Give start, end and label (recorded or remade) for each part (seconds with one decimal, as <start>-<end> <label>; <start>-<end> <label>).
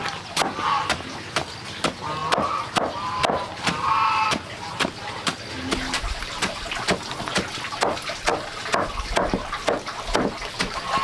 0.0-11.0 recorded